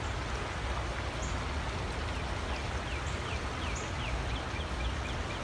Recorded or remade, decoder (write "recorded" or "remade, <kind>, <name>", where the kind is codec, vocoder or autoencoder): recorded